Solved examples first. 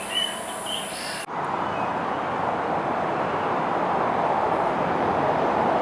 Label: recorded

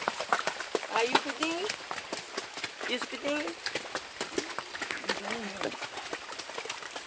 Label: recorded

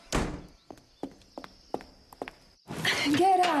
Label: recorded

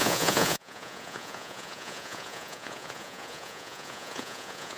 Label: remade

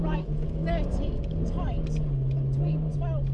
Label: recorded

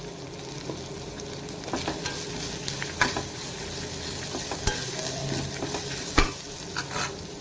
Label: recorded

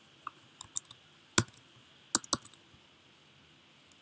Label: recorded